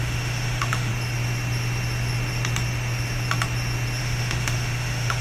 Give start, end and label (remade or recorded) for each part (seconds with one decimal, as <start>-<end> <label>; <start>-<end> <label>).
0.0-0.9 remade; 0.9-4.0 recorded; 4.0-5.2 remade